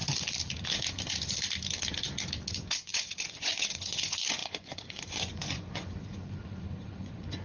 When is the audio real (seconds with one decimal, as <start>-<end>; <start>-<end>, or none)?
0.0-2.5; 6.4-7.0

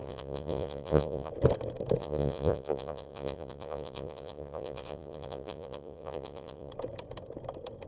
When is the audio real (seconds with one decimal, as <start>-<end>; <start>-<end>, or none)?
1.3-2.0; 6.7-7.9

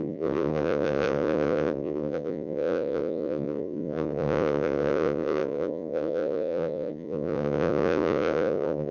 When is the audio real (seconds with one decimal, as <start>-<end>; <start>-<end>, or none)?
none